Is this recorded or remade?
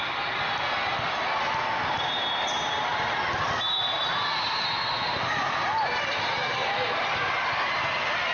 recorded